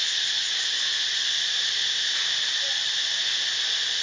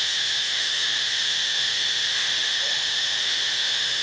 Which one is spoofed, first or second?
second